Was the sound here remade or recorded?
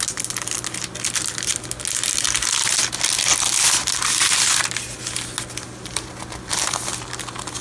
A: recorded